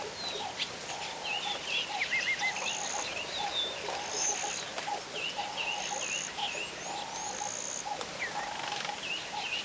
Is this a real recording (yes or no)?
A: yes